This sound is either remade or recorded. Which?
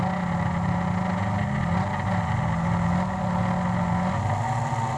recorded